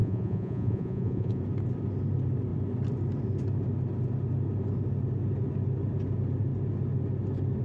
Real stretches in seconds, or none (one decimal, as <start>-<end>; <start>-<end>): 1.4-7.6